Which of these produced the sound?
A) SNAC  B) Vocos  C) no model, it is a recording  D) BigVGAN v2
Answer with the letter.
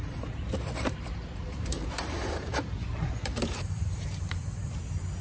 D